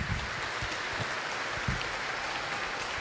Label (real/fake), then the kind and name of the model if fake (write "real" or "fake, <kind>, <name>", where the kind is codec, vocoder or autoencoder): real